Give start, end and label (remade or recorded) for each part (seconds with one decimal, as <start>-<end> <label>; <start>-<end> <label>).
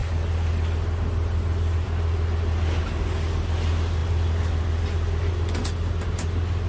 0.0-6.7 recorded